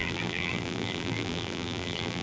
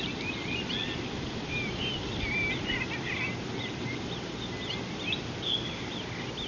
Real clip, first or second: second